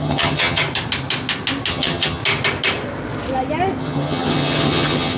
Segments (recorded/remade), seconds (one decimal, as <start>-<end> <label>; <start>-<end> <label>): 0.0-0.6 remade; 0.6-1.7 recorded; 1.7-2.2 remade; 2.2-3.8 recorded; 3.8-5.2 remade